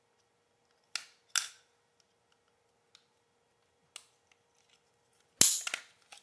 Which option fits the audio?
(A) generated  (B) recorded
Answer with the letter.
B